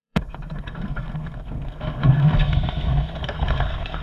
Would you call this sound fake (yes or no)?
yes